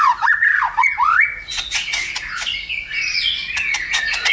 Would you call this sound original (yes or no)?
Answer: no